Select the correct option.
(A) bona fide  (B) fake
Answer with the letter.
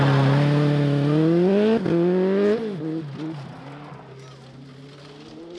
A